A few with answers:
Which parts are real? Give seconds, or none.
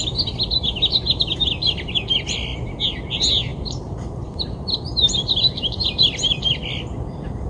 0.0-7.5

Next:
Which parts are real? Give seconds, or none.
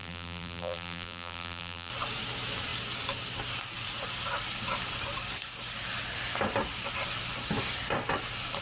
1.9-8.6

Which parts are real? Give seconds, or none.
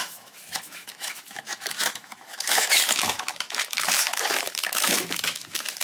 none